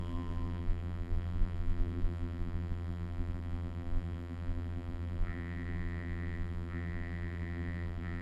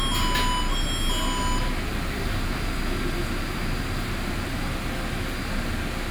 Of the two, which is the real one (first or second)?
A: second